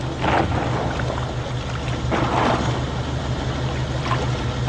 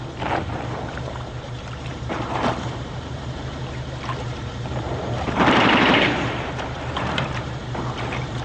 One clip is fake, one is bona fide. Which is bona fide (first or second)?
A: first